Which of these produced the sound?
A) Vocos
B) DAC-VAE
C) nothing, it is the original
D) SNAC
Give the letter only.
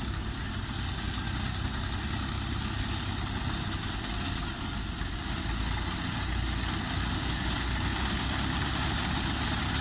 C